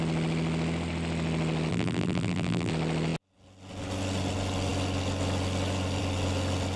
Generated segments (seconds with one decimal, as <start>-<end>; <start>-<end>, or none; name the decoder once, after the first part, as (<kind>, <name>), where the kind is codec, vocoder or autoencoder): 1.7-2.7 (vocoder, BigVGAN v2)